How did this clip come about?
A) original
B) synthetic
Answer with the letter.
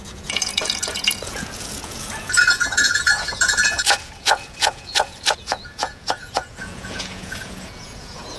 B